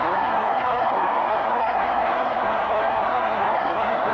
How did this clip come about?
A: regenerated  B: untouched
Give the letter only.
A